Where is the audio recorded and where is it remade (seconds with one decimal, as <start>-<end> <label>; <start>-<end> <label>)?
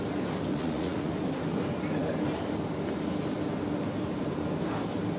0.0-0.5 recorded; 0.5-1.1 remade; 1.1-5.2 recorded